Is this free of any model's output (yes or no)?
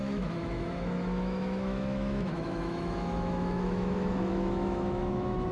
no